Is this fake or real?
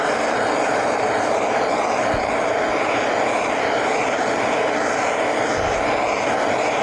real